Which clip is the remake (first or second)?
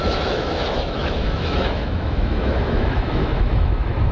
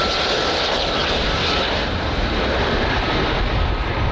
first